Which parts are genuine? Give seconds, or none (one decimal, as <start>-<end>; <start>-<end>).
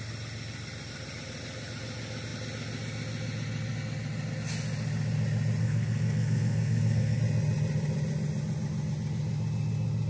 0.0-5.6; 7.2-10.1